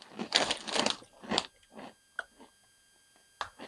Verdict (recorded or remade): recorded